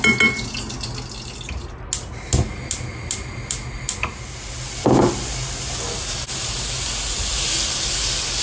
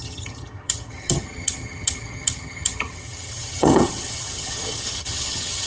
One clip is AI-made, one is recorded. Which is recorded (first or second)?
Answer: first